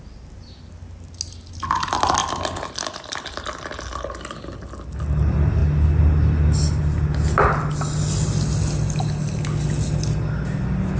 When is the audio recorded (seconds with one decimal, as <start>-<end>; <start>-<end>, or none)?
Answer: 0.0-11.0